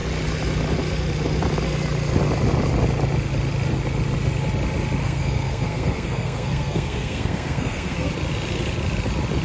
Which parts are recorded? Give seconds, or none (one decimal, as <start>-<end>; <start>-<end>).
0.0-5.0; 8.1-9.4